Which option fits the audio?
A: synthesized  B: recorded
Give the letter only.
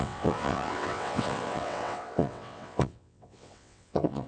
A